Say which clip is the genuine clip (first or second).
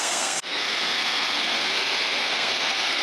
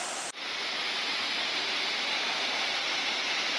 second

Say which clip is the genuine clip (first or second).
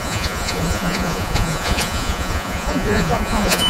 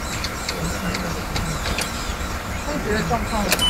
second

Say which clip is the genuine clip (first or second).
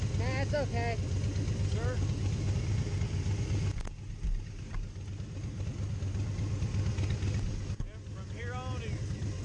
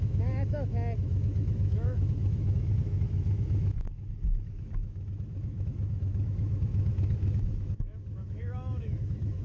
first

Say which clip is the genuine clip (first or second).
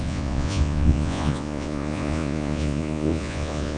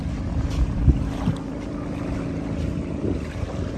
second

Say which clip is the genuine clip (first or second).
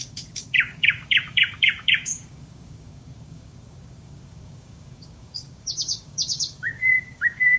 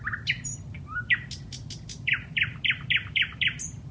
second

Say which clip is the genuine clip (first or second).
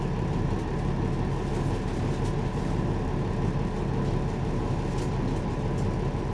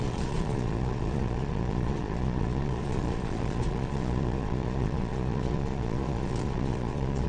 first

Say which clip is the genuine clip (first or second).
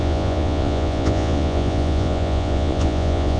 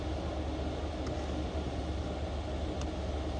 second